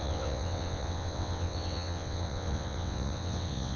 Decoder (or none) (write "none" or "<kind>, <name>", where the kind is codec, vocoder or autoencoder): vocoder, WaveNeXt